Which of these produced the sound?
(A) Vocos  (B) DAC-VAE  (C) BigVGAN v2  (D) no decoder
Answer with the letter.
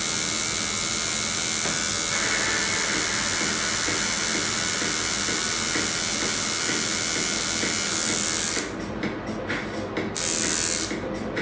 D